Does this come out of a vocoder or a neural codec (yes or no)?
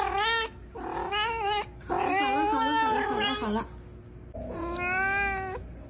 no